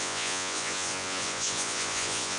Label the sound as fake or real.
fake